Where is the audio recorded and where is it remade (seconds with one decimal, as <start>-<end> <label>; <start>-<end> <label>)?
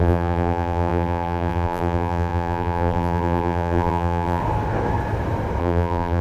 0.0-4.4 remade; 4.4-5.6 recorded; 5.6-6.2 remade